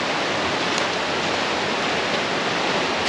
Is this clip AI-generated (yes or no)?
no